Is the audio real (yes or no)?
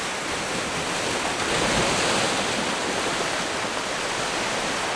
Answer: yes